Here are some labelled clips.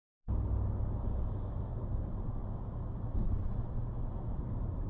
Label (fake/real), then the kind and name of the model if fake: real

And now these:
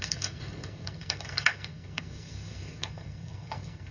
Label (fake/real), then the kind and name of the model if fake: fake, codec, SNAC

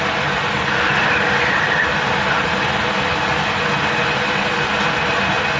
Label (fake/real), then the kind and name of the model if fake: real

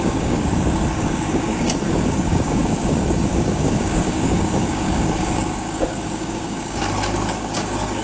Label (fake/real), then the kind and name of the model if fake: fake, codec, DAC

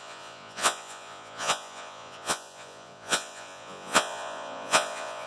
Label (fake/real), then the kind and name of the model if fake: fake, vocoder, Vocos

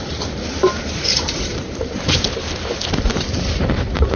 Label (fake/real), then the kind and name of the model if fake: fake, vocoder, BigVGAN v2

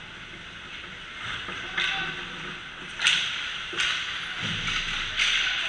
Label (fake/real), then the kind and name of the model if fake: real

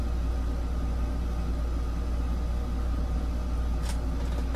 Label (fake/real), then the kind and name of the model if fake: real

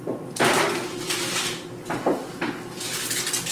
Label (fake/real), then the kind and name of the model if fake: real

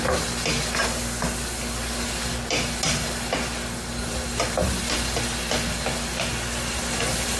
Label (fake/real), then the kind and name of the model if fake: real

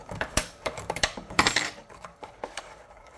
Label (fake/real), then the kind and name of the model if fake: fake, codec, DAC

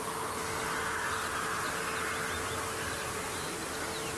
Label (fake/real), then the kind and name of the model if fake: real